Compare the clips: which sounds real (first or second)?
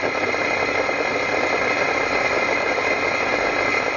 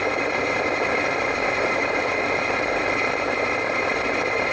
first